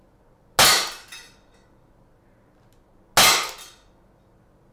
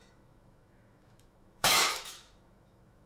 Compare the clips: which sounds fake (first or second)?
second